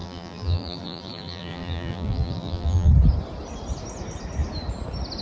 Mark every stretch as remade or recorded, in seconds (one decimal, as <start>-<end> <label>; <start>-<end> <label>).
0.0-2.9 remade; 2.9-5.2 recorded